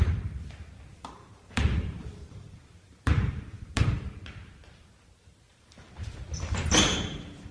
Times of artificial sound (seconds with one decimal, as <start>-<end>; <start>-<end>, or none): 1.0-3.9; 5.5-6.1